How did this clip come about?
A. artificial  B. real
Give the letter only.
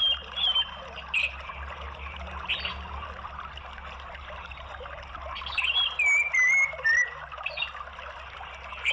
B